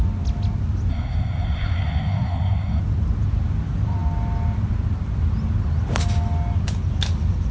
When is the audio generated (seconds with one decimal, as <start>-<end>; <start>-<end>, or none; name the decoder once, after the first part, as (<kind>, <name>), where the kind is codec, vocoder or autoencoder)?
0.9-2.8 (codec, SNAC)